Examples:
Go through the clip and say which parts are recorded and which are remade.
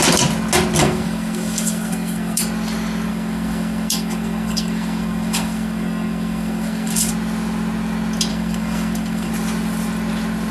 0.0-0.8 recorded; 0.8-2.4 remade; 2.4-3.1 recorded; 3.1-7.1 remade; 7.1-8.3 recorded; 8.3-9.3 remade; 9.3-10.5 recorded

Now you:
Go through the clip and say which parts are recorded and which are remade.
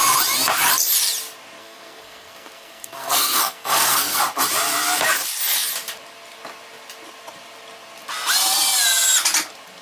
0.0-1.6 recorded; 1.6-4.2 remade; 4.2-9.8 recorded